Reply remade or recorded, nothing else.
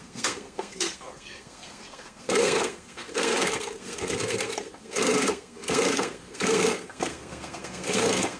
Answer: remade